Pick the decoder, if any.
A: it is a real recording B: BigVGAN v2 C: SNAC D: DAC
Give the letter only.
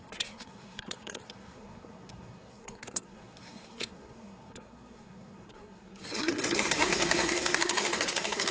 C